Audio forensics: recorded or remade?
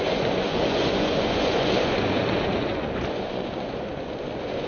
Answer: remade